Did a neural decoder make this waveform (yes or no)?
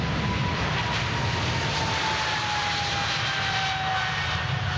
no